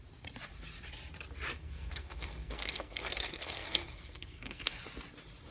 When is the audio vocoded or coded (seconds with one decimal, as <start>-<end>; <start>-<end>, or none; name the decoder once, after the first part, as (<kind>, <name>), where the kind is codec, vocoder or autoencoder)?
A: 1.5-4.8 (codec, SNAC)